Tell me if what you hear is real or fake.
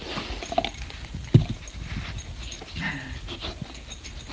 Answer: real